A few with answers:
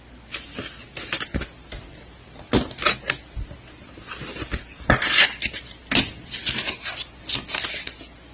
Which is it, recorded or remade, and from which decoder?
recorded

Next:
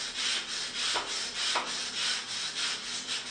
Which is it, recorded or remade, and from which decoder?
recorded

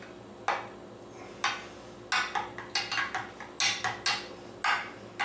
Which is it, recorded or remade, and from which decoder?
recorded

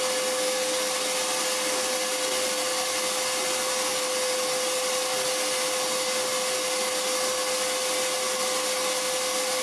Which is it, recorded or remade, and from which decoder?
recorded